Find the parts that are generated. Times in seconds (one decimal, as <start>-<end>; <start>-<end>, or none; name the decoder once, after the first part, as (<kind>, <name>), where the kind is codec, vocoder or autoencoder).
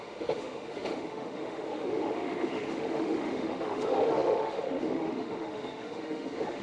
0.0-6.6 (autoencoder, DAC-VAE)